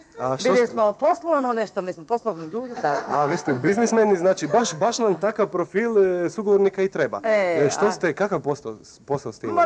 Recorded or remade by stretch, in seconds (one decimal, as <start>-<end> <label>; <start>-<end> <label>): 0.0-0.7 recorded; 0.7-3.9 remade; 3.9-4.6 recorded; 4.6-5.3 remade; 5.3-9.7 recorded